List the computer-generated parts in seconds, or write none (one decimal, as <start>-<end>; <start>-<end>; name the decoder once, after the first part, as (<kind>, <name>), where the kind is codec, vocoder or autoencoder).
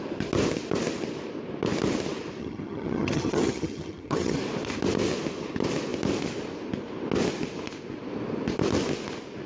2.4-4.4 (vocoder, HiFi-GAN)